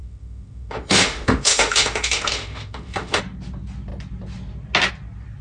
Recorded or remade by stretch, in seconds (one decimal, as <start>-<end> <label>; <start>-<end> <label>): 0.0-3.2 remade; 3.2-5.4 recorded